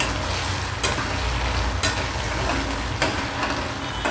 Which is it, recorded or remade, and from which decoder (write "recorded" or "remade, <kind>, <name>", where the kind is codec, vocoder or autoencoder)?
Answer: recorded